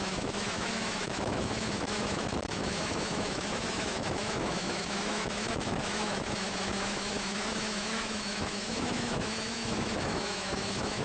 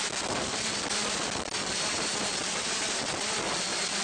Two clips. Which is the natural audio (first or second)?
second